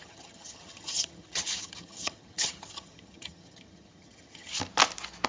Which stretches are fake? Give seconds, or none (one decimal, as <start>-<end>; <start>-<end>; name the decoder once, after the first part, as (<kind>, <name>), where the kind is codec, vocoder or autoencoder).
0.0-4.5 (vocoder, HiFi-GAN)